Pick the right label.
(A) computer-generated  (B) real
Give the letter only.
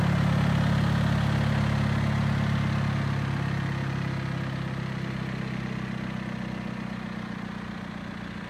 B